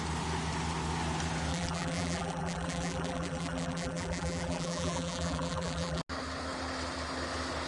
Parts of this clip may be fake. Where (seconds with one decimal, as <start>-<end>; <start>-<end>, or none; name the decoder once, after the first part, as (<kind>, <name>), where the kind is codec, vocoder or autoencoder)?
1.5-6.0 (vocoder, BigVGAN v2)